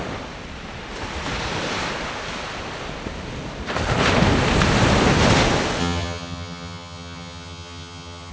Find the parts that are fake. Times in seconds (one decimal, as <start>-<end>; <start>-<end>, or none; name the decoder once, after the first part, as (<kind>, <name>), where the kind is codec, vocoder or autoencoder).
5.8-8.3 (vocoder, HiFi-GAN)